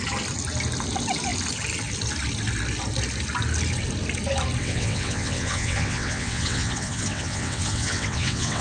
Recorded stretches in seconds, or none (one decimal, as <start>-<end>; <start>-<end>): 0.0-4.6